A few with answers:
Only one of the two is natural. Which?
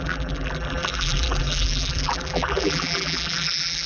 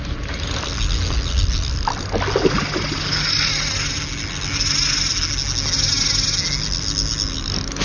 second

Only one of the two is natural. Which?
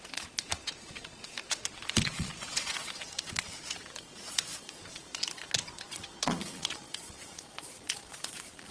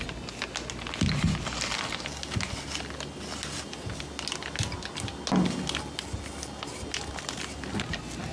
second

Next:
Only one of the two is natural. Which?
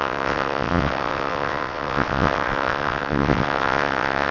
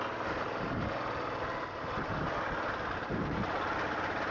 second